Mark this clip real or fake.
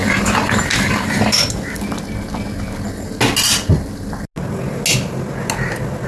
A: real